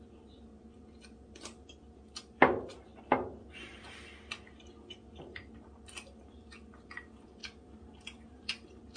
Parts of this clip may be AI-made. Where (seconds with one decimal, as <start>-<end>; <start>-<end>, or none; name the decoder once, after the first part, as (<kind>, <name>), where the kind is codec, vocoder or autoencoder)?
0.0-2.9 (vocoder, BigVGAN v2); 5.2-7.4; 8.2-9.0